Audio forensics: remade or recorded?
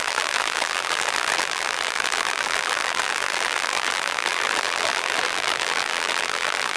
remade